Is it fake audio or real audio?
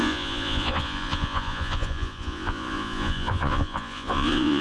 fake